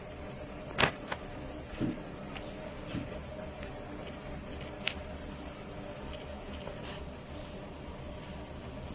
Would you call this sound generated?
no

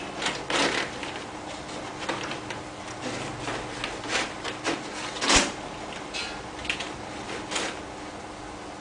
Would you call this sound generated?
no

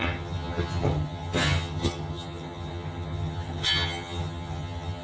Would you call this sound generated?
yes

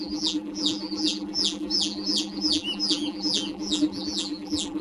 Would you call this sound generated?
yes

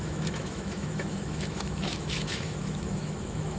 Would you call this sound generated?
yes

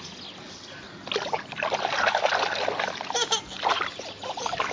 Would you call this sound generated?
no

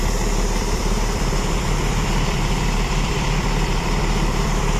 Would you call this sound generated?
yes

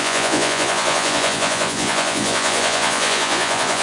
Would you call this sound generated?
yes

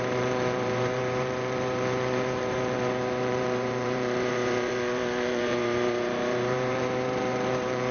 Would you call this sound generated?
yes